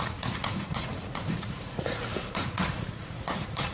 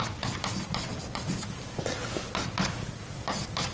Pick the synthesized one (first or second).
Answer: first